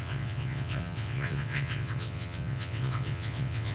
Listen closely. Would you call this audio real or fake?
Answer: fake